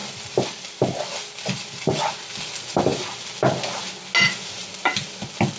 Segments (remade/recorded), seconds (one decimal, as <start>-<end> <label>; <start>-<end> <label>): 0.0-5.6 recorded